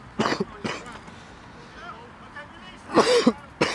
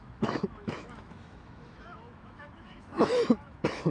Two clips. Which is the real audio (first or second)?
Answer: first